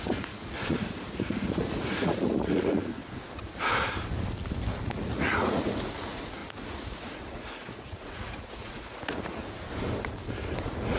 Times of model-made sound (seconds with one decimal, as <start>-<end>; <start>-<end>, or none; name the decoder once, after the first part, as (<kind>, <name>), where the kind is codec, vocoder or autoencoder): 0.0-3.0 (vocoder, Vocos); 4.8-9.4; 10.6-11.0